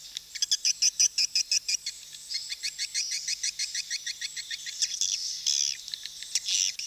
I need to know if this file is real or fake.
real